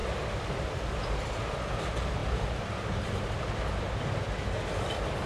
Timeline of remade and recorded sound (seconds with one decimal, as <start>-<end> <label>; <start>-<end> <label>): 0.0-0.7 remade; 0.7-2.2 recorded; 2.2-3.5 remade; 3.5-5.3 recorded